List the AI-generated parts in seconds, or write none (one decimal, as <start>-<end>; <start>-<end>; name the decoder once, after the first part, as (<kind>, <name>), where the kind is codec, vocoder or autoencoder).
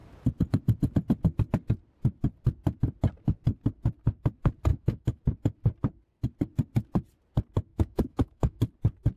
4.7-5.2 (autoencoder, DAC-VAE); 7.7-8.6